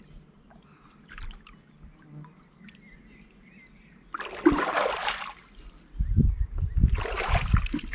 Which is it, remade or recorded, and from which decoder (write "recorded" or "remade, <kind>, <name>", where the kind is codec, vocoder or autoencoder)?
recorded